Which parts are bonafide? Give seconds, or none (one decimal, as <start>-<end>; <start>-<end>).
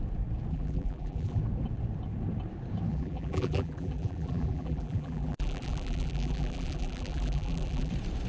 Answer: 0.0-0.5; 1.4-2.9; 7.9-8.3